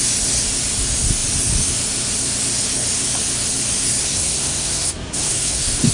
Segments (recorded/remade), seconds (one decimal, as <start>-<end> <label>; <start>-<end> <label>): 0.0-4.0 recorded; 4.0-5.9 remade

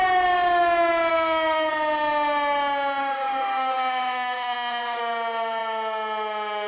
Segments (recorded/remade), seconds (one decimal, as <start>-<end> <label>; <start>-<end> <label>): 0.0-1.1 recorded; 1.1-1.7 remade; 1.7-3.0 recorded; 3.0-5.0 remade; 5.0-6.7 recorded